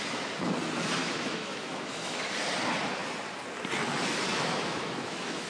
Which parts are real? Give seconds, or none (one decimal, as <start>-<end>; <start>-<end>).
0.0-1.0; 2.3-4.3